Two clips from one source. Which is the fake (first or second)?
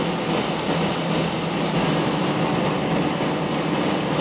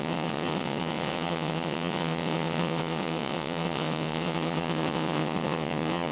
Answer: second